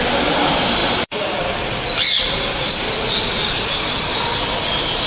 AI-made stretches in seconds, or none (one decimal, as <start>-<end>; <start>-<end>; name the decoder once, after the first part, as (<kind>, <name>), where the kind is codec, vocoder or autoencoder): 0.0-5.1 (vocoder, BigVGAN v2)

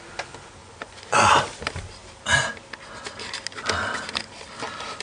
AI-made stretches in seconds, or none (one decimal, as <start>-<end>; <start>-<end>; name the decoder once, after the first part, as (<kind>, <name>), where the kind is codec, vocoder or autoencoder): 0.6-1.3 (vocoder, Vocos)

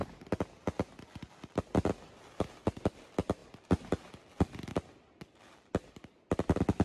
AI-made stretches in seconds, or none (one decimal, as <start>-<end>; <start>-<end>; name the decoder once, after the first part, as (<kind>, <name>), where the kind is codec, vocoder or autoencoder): none

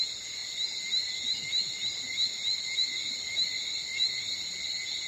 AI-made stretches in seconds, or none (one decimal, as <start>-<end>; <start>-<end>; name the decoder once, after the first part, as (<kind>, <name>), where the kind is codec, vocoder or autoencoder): none

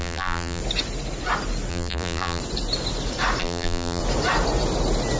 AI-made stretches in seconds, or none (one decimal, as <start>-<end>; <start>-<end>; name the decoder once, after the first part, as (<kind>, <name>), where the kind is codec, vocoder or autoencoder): 0.0-0.6 (vocoder, BigVGAN v2); 1.7-2.4; 3.4-4.0

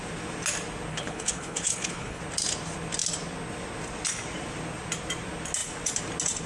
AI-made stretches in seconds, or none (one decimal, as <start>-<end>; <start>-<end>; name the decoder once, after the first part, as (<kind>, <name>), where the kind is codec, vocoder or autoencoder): 0.9-2.2 (codec, HILCodec)